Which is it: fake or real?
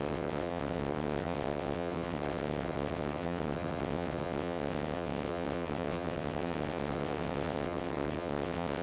fake